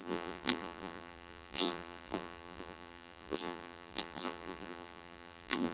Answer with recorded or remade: remade